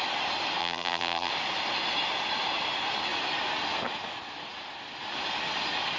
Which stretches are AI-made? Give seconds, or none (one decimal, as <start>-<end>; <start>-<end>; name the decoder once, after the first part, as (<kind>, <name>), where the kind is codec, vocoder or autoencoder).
0.6-1.3 (vocoder, BigVGAN v2)